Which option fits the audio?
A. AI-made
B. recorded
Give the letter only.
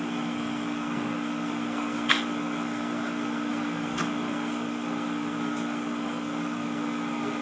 A